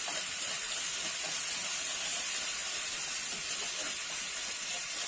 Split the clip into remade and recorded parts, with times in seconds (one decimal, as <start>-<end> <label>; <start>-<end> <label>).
0.0-2.6 remade; 2.6-5.1 recorded